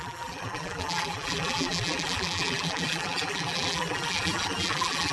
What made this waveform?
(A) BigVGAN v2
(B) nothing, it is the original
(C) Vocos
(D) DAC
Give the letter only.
A